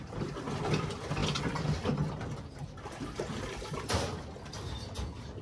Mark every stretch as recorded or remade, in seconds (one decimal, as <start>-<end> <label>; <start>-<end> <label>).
0.0-5.4 recorded